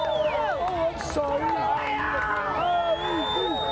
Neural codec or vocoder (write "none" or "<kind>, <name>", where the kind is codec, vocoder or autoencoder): none